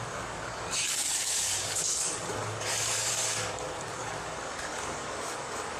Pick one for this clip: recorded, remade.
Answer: remade